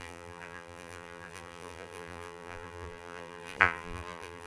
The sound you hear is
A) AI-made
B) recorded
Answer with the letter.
A